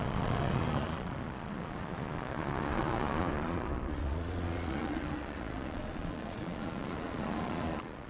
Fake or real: fake